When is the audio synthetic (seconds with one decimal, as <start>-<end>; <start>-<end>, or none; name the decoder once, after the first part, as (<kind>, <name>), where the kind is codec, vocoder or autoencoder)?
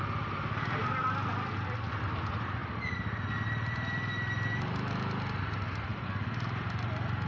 none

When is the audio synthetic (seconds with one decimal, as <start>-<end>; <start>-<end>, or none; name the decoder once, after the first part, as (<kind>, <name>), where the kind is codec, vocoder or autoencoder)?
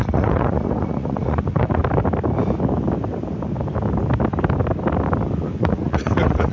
0.0-1.8 (vocoder, Vocos); 5.6-6.5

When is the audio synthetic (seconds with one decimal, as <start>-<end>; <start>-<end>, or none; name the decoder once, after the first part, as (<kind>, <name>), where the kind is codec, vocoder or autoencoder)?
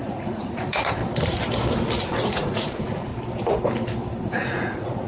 0.0-1.0 (vocoder, Vocos); 2.0-3.1; 4.2-5.1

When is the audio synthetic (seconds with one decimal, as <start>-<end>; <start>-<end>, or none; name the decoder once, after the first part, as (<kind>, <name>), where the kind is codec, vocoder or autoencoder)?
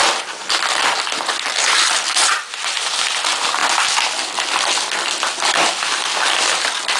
none